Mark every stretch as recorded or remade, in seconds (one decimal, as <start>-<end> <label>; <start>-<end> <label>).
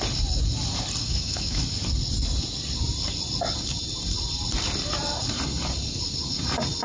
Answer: 0.0-1.0 recorded; 1.0-1.6 remade; 1.6-6.8 recorded